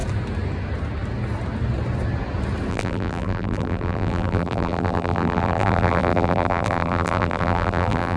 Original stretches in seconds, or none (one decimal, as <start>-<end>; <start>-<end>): 0.0-2.7